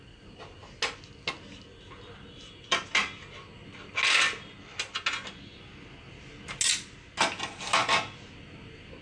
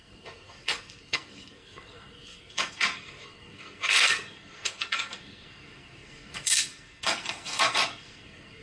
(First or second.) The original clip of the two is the first